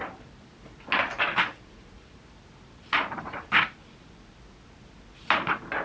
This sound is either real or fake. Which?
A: real